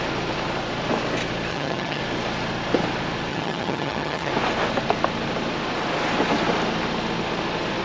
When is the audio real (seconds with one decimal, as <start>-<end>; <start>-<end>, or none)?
0.0-1.5; 2.0-3.3; 4.3-7.8

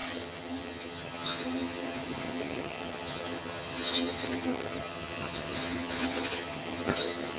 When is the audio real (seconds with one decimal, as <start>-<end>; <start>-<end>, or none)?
none

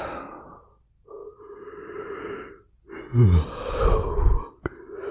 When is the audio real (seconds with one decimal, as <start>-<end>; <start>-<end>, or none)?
0.0-5.1

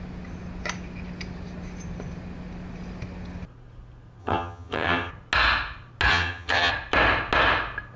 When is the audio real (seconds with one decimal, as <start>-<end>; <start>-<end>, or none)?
0.0-4.2; 5.1-6.1; 6.7-8.0

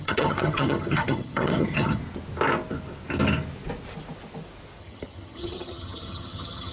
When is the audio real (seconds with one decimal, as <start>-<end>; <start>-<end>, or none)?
2.0-4.8

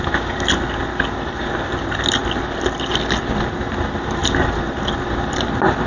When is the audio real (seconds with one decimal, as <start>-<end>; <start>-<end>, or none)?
0.0-5.9